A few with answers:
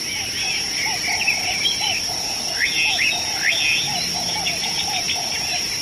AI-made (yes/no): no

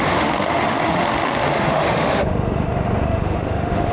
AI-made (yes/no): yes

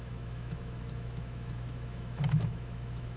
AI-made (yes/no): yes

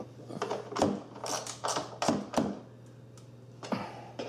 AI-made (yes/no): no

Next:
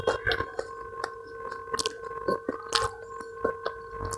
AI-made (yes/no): no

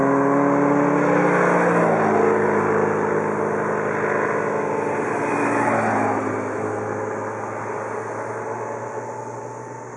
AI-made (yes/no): no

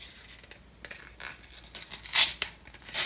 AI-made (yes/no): no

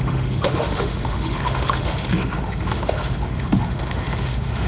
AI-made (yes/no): yes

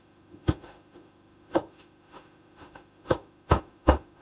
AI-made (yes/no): yes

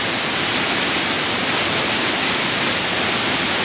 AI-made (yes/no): no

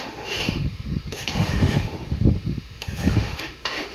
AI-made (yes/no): yes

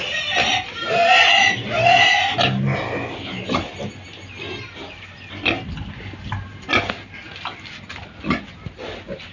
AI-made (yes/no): no